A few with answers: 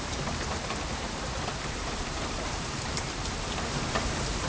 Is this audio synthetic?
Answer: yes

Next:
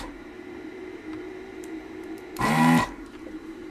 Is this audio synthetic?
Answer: yes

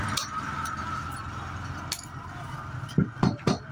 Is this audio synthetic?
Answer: no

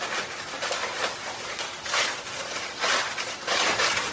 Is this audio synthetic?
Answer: no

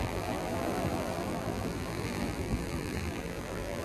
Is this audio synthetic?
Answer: yes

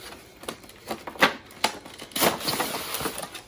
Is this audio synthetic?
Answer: no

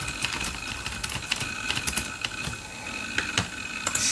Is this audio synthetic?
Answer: no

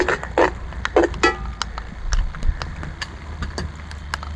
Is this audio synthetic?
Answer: no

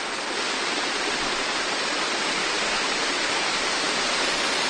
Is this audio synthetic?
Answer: no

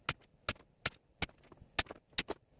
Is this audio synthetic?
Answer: no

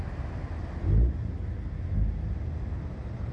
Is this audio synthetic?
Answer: no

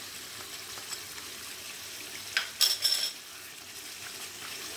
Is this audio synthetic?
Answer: no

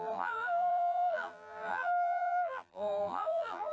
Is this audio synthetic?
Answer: yes